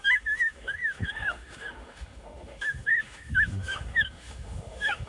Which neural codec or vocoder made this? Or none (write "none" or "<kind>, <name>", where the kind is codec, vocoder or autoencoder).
autoencoder, DAC-VAE